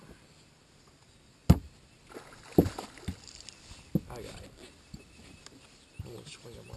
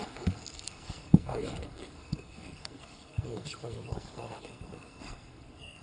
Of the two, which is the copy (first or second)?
second